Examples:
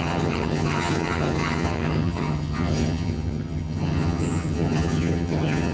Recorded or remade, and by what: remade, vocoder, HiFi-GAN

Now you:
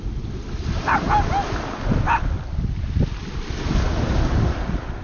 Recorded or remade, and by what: recorded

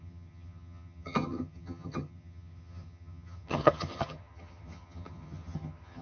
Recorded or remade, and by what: remade, vocoder, HiFi-GAN